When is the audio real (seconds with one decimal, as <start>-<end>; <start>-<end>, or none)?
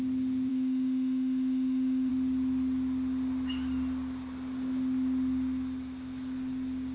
0.0-0.5; 2.1-6.9